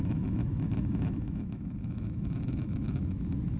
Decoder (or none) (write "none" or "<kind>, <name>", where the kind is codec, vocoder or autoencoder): autoencoder, DAC-VAE